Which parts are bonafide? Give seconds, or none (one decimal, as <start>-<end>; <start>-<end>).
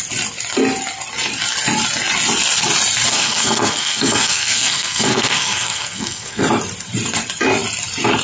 0.0-3.1; 6.4-8.2